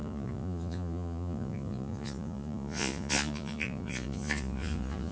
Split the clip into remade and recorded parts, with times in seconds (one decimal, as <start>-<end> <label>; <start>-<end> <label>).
0.0-5.1 remade